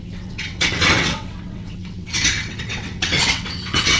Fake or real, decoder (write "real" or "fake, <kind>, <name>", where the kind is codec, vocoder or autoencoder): fake, vocoder, WaveNeXt